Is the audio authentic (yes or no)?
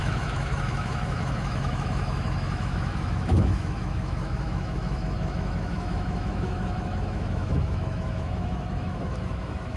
no